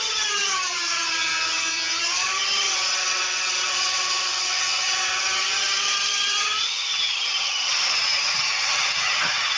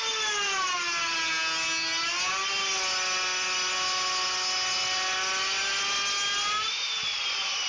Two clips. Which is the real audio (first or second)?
second